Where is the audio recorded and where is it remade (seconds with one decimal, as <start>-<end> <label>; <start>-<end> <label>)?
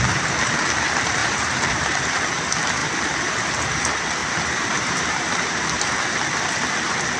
0.0-1.2 recorded; 1.2-2.2 remade; 2.2-4.2 recorded; 4.2-5.9 remade; 5.9-7.2 recorded